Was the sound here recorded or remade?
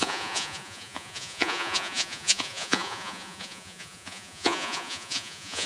remade